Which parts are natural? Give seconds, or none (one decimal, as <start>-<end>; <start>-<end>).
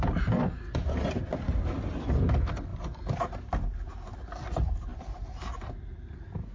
0.0-6.5